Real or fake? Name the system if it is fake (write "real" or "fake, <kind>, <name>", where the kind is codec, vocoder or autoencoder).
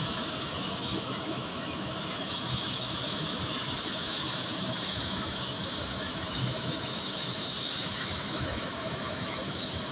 fake, autoencoder, DAC-VAE